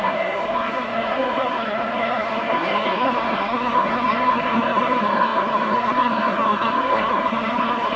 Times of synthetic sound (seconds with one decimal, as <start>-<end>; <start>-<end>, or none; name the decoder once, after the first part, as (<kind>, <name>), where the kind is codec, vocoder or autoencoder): 0.0-8.0 (codec, SNAC)